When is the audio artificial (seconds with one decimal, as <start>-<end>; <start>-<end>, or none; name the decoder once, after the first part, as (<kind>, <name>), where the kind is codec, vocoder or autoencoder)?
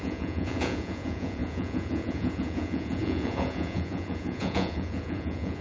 0.0-5.6 (vocoder, Vocos)